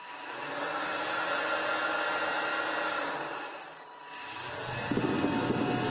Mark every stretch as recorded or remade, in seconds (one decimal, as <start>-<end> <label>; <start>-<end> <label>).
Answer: 0.0-5.9 recorded